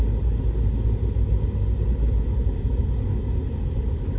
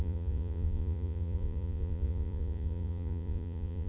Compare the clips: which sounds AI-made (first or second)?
second